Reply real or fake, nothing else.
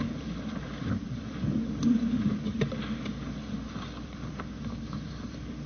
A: fake